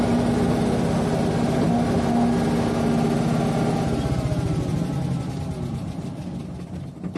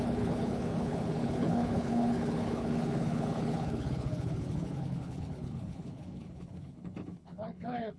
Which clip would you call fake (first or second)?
second